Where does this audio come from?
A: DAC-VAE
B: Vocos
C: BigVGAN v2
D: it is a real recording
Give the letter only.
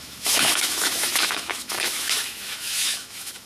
A